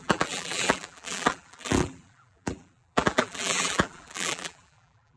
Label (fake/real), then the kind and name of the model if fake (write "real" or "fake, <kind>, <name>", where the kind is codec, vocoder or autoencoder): fake, vocoder, BigVGAN v2